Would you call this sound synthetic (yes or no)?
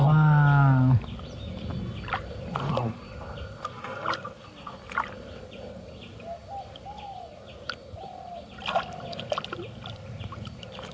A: no